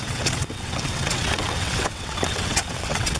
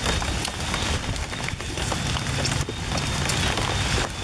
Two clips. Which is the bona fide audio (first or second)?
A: second